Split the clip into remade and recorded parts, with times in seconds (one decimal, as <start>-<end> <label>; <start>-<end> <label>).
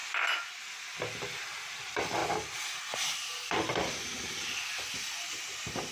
0.0-5.9 recorded